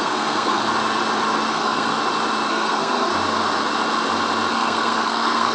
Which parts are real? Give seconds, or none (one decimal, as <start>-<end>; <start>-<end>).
0.6-1.5; 1.9-2.5; 3.1-4.5